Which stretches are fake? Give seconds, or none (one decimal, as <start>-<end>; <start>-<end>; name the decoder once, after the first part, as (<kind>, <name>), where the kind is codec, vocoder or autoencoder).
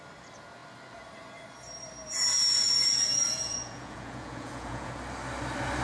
2.5-4.9 (vocoder, Vocos)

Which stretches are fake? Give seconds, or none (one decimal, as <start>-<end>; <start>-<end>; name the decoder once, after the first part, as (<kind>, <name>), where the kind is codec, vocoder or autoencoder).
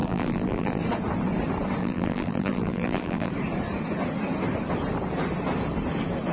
0.0-0.8 (vocoder, BigVGAN v2); 1.8-3.3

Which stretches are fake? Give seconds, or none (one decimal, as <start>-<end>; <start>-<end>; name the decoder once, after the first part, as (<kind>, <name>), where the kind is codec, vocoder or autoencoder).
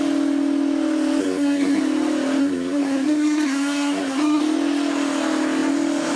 1.2-1.8 (codec, SNAC); 2.4-4.4